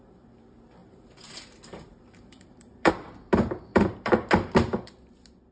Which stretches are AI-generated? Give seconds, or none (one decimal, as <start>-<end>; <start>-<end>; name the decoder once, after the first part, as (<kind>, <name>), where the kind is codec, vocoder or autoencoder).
0.8-2.9 (vocoder, BigVGAN v2); 3.7-4.3